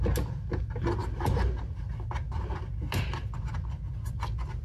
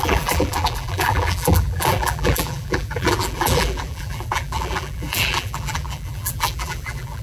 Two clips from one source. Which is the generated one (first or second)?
second